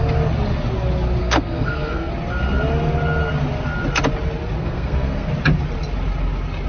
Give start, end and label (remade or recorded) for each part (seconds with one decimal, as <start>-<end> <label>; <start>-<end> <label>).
0.0-1.2 recorded; 1.2-2.1 remade; 2.1-4.6 recorded; 4.6-5.3 remade; 5.3-6.7 recorded